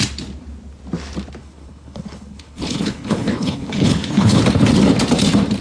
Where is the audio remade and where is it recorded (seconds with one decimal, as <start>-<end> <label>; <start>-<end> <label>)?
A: 0.0-1.4 recorded; 1.4-4.4 remade; 4.4-5.6 recorded